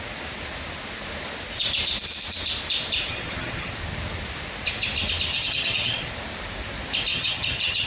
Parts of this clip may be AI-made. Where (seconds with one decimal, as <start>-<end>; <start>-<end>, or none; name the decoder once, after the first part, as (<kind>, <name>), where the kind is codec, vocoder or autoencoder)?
3.1-3.7 (vocoder, HiFi-GAN); 5.3-6.1; 7.1-7.9